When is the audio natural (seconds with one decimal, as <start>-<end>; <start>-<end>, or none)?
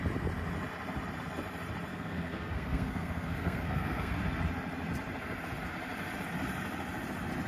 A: 0.0-1.9; 4.2-7.5